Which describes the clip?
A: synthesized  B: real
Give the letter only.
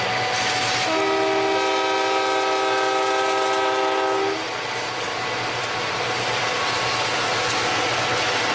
B